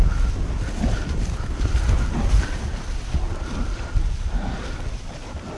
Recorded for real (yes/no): yes